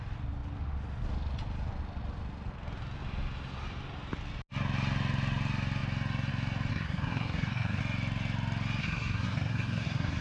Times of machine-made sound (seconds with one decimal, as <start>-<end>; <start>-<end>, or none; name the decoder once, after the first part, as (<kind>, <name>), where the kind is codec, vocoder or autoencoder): 6.7-7.8 (codec, SNAC); 8.8-10.2